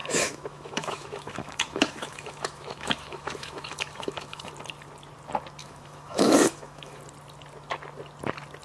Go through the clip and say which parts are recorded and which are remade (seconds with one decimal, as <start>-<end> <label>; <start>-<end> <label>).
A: 0.0-4.5 remade; 4.5-5.6 recorded; 5.6-7.0 remade; 7.0-8.6 recorded

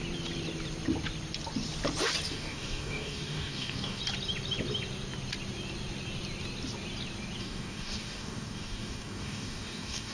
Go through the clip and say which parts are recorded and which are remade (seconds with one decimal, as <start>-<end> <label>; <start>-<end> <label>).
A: 0.0-2.3 recorded; 2.3-4.0 remade; 4.0-7.4 recorded; 7.4-10.1 remade